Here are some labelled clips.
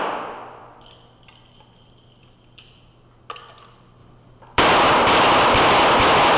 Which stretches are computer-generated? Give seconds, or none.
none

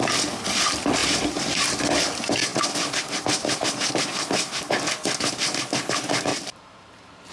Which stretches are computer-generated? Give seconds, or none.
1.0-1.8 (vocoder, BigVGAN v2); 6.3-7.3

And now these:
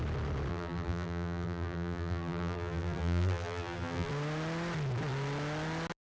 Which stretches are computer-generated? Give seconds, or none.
0.5-4.1 (vocoder, BigVGAN v2)

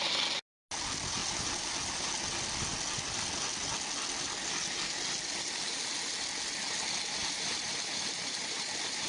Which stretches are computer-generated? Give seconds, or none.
7.2-9.1 (vocoder, BigVGAN v2)